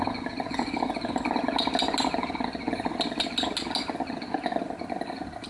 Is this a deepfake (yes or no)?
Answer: no